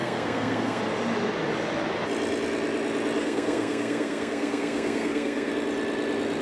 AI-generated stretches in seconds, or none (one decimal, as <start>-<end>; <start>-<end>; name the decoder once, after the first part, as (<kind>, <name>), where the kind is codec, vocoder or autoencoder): 0.0-0.8 (codec, SNAC); 3.2-5.5